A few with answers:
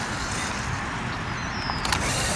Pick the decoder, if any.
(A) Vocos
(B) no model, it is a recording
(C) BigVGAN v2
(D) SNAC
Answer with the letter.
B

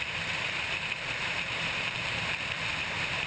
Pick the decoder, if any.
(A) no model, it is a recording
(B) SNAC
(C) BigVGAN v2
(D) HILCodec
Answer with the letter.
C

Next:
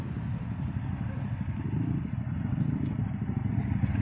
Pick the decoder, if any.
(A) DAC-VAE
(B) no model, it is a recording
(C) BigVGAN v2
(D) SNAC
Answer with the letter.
B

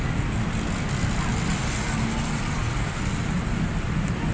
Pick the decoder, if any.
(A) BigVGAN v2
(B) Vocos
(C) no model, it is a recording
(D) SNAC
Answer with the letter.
C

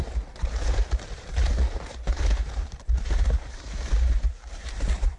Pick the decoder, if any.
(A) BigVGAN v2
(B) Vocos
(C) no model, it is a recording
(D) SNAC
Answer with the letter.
A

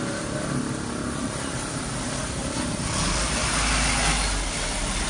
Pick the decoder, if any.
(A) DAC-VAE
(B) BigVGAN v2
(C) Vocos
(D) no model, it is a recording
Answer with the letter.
D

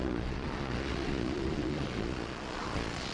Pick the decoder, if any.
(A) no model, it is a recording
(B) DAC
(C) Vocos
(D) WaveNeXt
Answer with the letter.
C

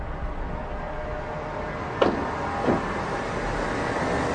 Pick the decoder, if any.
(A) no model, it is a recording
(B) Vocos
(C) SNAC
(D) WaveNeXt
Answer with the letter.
A